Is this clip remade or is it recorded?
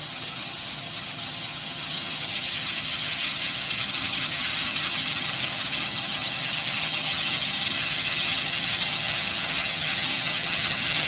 remade